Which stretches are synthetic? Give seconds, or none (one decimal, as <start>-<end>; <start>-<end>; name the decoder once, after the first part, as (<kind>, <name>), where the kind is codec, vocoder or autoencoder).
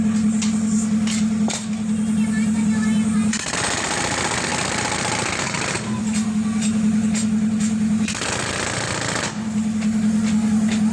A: none